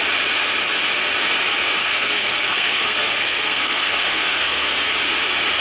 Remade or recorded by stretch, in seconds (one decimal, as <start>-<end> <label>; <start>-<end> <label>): 0.0-1.8 recorded; 1.8-4.7 remade; 4.7-5.6 recorded